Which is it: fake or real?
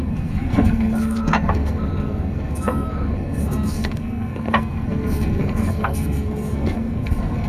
fake